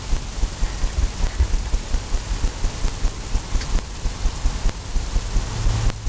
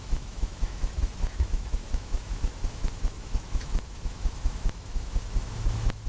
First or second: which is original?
first